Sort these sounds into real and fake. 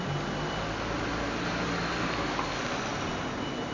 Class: real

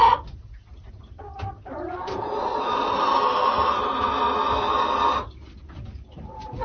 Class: real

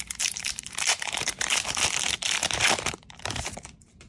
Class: fake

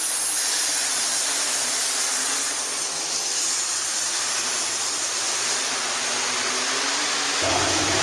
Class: real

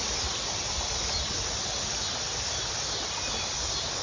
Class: real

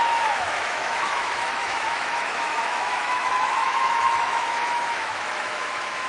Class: fake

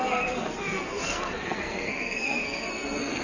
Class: fake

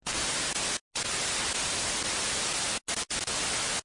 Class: real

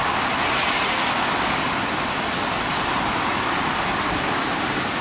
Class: real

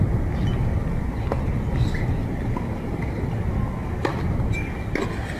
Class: real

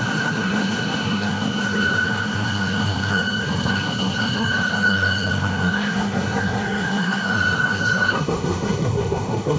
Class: fake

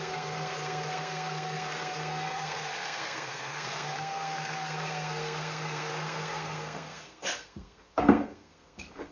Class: fake